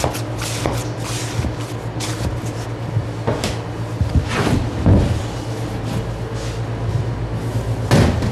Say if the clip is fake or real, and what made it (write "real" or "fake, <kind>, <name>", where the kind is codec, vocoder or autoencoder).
real